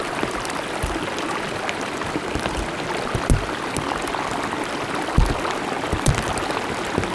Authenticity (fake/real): real